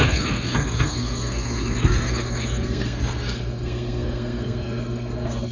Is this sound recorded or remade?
remade